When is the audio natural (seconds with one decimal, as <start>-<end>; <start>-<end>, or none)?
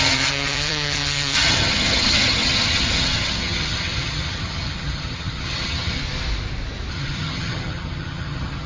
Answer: 6.0-6.9